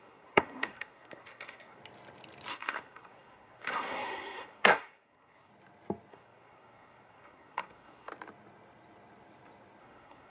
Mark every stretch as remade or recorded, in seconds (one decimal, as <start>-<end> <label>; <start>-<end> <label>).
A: 0.0-1.8 remade; 1.8-2.5 recorded; 2.5-5.5 remade; 5.5-6.1 recorded; 6.1-8.1 remade; 8.1-9.8 recorded; 9.8-10.3 remade